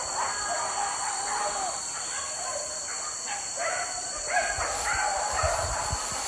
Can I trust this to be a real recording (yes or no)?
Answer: yes